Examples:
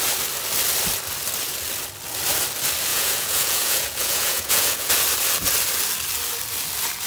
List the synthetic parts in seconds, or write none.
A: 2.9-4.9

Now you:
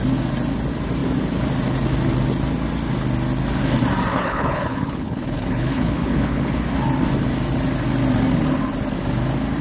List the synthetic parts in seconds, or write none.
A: 4.1-6.6

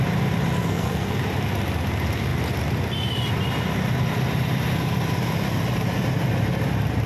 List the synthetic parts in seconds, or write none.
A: 0.6-1.2

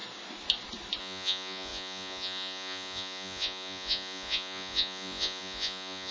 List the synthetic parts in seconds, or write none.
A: 1.0-6.1

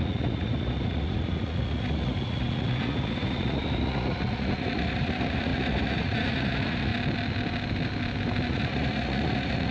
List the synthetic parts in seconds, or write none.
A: 0.0-6.9; 8.5-9.7